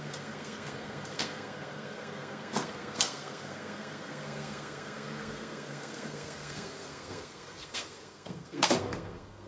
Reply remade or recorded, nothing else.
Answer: remade